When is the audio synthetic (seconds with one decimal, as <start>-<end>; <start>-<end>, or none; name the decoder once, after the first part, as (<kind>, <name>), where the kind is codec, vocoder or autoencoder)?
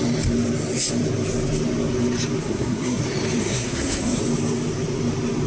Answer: 2.4-3.0 (codec, SNAC); 3.4-4.2